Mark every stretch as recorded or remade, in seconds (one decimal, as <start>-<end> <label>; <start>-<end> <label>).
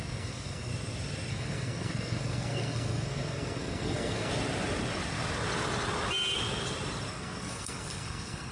0.0-0.7 remade; 0.7-1.3 recorded; 1.3-4.3 remade; 4.3-7.1 recorded; 7.1-8.5 remade